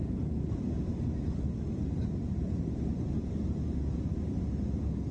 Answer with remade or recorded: remade